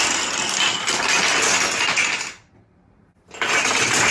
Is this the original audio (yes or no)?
yes